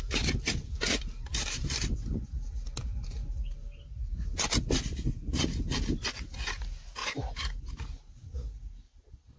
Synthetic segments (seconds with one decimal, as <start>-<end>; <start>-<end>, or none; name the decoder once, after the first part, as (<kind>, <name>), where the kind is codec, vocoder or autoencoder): 7.0-7.6 (vocoder, BigVGAN v2)